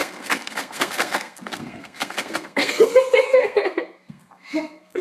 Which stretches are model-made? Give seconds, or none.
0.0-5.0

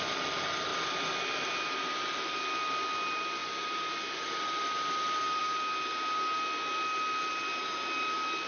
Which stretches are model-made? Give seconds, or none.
none

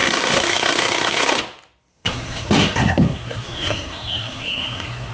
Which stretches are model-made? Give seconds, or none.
0.0-1.4; 1.9-5.1

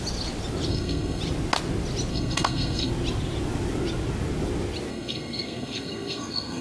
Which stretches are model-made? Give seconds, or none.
0.7-1.2; 2.1-2.9; 4.9-6.6

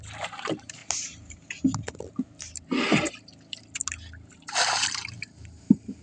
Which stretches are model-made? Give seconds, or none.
0.0-0.8; 4.3-6.0